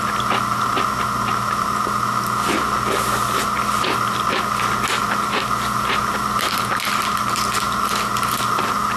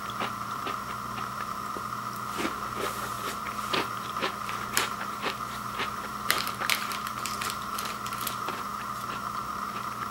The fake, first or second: second